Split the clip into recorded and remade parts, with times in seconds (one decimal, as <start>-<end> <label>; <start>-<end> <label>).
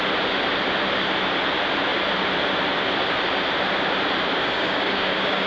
0.0-4.4 recorded; 4.4-5.5 remade